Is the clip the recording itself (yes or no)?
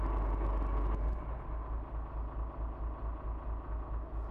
yes